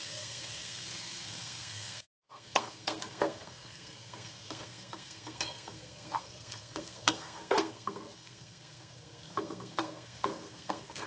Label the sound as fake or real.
fake